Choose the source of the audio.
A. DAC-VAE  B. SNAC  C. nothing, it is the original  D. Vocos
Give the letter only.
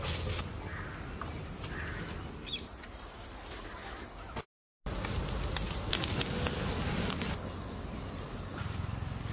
C